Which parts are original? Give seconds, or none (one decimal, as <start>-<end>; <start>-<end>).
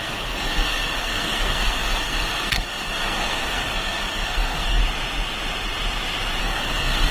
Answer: 4.8-6.4